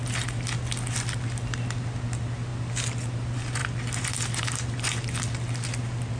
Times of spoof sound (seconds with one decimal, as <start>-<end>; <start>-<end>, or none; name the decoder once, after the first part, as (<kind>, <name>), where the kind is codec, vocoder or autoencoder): none